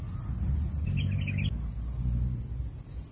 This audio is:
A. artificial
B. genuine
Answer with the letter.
B